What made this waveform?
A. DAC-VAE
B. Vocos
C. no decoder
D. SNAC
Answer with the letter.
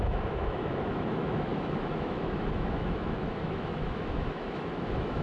A